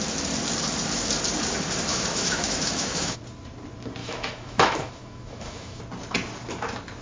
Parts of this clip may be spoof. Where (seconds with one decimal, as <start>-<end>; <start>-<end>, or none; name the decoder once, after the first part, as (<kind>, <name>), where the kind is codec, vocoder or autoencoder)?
1.9-3.2 (autoencoder, DAC-VAE); 4.0-5.8